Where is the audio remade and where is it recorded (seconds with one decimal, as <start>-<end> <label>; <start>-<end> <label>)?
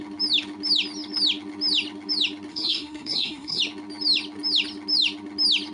0.0-2.5 recorded; 2.5-3.6 remade; 3.6-5.7 recorded